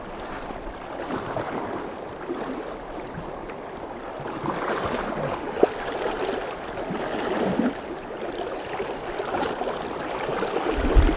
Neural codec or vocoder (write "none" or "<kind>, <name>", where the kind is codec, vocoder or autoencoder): none